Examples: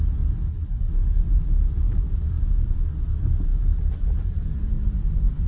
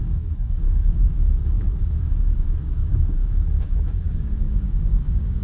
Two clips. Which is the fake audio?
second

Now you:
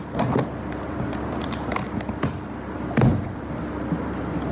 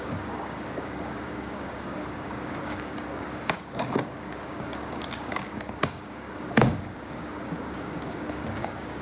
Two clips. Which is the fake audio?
second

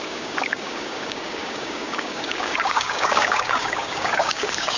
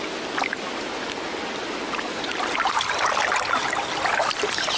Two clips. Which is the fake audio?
first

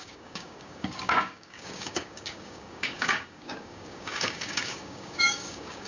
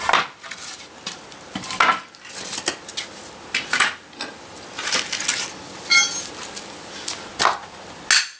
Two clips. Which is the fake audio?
first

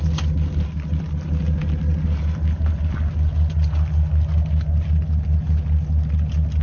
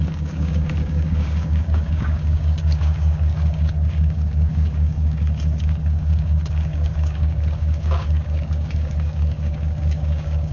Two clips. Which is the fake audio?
second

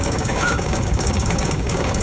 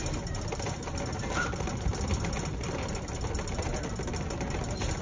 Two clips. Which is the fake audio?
first